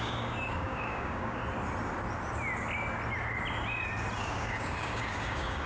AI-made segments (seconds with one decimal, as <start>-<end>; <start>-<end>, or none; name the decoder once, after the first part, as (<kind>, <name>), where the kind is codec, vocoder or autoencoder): 0.0-1.4 (codec, DAC); 4.2-5.7